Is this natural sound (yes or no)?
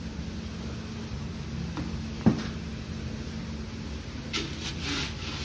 yes